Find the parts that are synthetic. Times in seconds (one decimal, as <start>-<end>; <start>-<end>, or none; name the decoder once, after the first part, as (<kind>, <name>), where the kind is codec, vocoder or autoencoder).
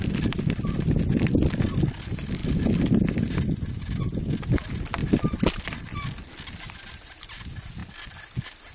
none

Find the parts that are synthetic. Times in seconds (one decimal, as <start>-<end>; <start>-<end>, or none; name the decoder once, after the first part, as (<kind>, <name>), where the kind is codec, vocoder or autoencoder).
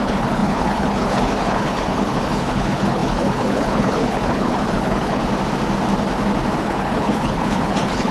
0.0-5.2 (codec, HILCodec); 6.6-8.1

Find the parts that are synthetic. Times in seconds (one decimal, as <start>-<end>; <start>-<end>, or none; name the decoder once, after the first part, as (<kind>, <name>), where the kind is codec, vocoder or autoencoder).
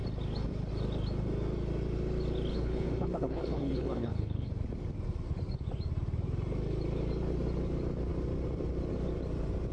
2.5-4.5 (codec, HILCodec)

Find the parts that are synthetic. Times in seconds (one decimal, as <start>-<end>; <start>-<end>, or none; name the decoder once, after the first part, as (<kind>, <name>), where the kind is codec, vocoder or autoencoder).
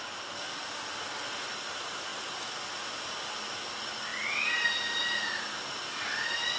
none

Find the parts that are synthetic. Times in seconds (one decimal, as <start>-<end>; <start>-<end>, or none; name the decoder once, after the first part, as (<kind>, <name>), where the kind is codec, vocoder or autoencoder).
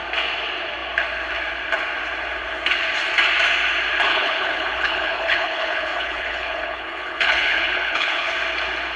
4.1-8.3 (codec, HILCodec)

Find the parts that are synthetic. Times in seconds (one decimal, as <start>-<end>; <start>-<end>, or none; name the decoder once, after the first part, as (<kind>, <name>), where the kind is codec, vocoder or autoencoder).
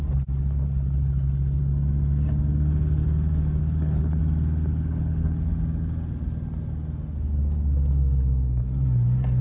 0.6-1.6 (codec, HILCodec); 3.6-4.2; 4.7-5.5